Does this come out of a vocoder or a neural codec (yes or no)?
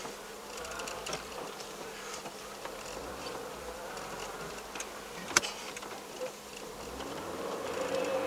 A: yes